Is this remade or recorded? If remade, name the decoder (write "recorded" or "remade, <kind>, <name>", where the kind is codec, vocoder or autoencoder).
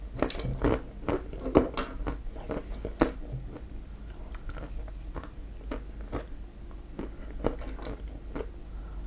recorded